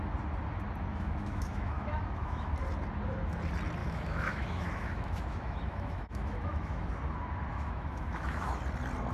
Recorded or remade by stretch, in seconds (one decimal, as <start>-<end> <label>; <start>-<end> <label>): 0.0-0.9 recorded; 0.9-2.5 remade; 2.5-3.8 recorded; 3.8-6.9 remade; 6.9-7.5 recorded; 7.5-8.6 remade; 8.6-9.1 recorded